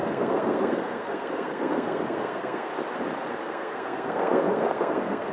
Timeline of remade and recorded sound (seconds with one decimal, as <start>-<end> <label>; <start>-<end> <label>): 0.0-2.7 remade; 2.7-3.3 recorded; 3.3-5.3 remade